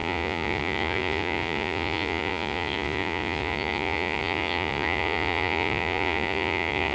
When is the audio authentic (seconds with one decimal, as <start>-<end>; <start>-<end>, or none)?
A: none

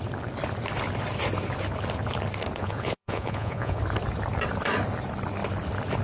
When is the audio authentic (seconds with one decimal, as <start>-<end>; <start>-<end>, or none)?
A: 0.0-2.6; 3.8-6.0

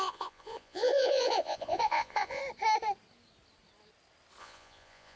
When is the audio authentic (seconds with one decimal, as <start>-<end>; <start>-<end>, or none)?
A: 2.4-4.4

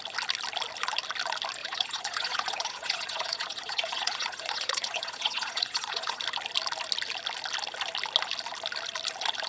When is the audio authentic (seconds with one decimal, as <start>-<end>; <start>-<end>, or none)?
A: 0.0-1.6; 6.2-9.5

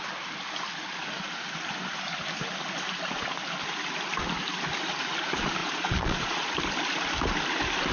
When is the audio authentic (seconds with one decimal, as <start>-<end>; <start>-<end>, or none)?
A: 0.0-5.6; 6.5-7.9